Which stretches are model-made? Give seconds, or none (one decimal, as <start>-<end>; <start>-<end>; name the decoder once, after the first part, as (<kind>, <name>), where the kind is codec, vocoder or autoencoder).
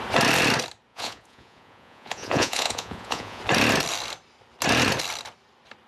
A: 0.9-3.4 (vocoder, Vocos)